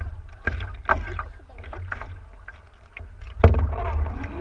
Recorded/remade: recorded